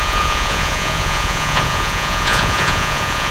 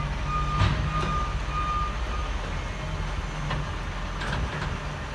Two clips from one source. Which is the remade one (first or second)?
first